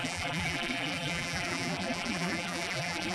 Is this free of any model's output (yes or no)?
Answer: no